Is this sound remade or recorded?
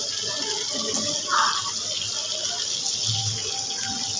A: recorded